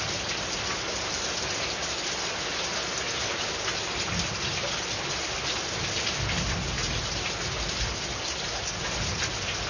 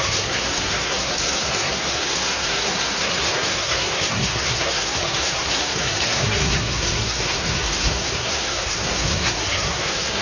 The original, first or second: first